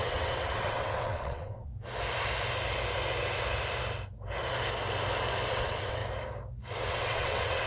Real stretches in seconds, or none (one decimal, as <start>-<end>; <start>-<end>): 1.7-5.5; 6.0-6.9